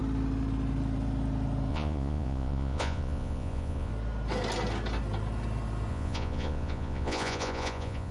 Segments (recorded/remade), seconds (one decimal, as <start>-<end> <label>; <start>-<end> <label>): 0.0-1.7 recorded; 1.7-3.9 remade; 3.9-5.9 recorded; 5.9-8.1 remade